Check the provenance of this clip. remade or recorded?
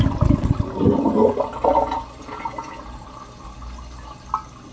recorded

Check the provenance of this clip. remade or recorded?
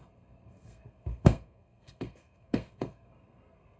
remade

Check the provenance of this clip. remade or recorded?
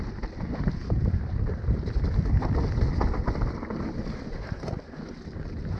recorded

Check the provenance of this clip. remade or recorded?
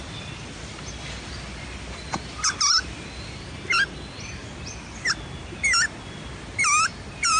recorded